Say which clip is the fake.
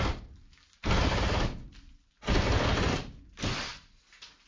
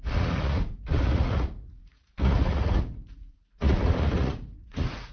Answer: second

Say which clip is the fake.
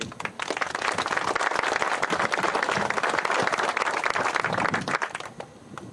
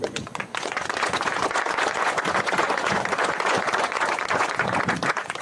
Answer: second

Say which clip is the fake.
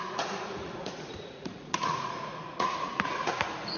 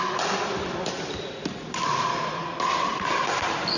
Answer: first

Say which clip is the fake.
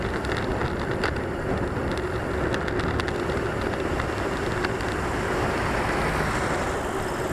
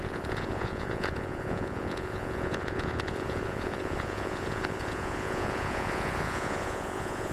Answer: second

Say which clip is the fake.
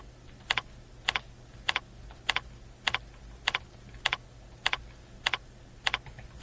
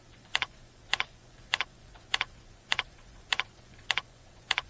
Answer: second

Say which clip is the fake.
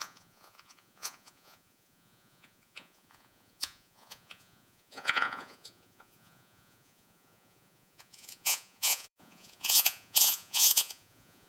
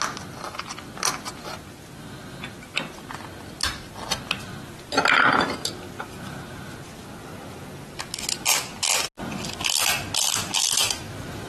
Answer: first